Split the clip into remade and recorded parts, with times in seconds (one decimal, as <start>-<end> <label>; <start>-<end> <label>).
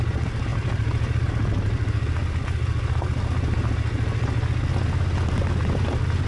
0.0-0.5 recorded; 0.5-1.3 remade; 1.3-6.3 recorded